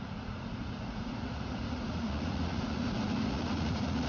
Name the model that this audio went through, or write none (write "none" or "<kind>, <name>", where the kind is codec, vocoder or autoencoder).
vocoder, Vocos